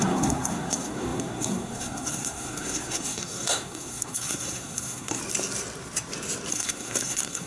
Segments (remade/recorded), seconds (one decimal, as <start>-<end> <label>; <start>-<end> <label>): 0.0-5.2 remade; 5.2-6.5 recorded; 6.5-7.5 remade